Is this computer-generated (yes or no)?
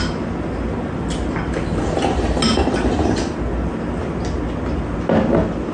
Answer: no